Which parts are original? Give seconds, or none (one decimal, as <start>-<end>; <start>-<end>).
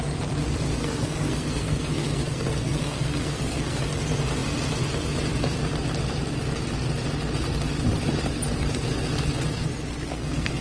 0.0-0.8; 3.8-10.1